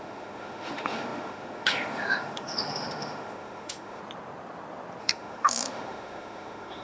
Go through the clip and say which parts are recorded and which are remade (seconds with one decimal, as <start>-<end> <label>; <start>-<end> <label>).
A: 0.0-4.0 remade; 4.0-5.0 recorded; 5.0-6.8 remade